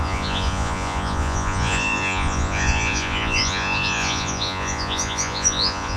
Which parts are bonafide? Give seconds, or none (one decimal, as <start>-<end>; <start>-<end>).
none